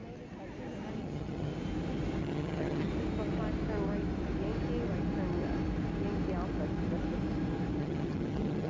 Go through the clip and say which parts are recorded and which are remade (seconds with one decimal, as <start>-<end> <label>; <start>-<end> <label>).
0.0-1.0 recorded; 1.0-1.5 remade; 1.5-2.2 recorded; 2.2-2.9 remade; 2.9-7.8 recorded; 7.8-8.7 remade